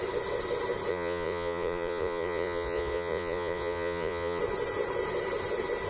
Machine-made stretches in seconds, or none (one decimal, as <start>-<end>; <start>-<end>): 0.9-4.4